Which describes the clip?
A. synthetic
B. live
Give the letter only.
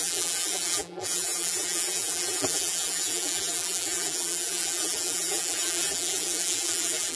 A